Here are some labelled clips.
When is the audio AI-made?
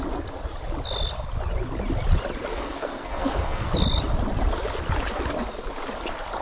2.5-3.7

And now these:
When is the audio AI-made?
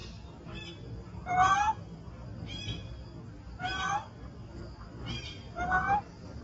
none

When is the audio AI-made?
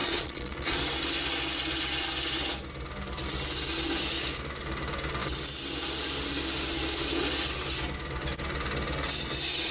0.0-0.8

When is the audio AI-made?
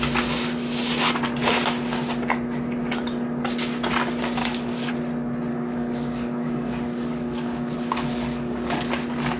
4.4-4.9; 5.5-8.9